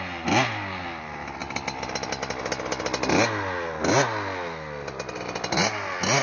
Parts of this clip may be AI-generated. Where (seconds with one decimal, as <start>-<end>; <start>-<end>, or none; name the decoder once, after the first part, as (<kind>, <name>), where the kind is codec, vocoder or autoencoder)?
none